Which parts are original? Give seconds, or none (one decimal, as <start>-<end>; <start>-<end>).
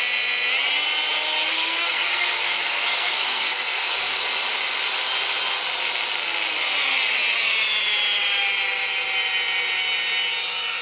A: 0.0-1.5; 4.1-10.8